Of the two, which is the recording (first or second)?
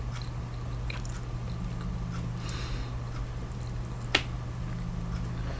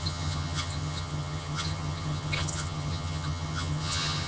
first